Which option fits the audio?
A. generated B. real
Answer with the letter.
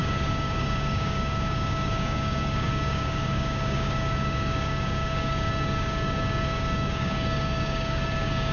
A